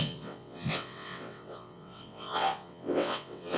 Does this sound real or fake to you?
fake